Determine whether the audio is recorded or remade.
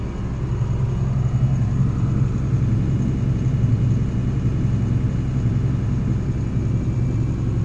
recorded